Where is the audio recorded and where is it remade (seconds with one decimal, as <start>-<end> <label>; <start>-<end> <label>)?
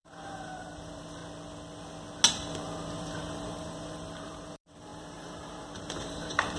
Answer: 0.0-1.2 remade; 1.2-2.3 recorded; 2.3-6.6 remade